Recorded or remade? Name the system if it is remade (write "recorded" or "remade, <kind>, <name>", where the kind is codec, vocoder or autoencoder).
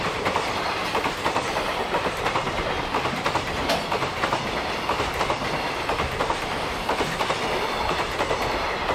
remade, vocoder, BigVGAN v2